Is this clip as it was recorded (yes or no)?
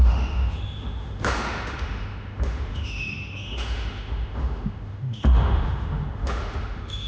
no